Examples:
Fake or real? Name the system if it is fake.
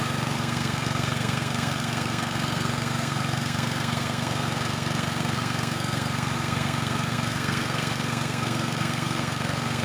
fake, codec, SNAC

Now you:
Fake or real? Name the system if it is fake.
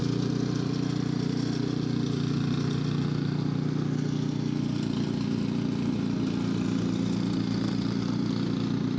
real